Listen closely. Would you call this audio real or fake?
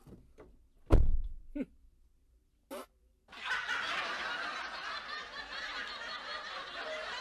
real